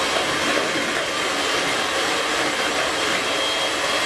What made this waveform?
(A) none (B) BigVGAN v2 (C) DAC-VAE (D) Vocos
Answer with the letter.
A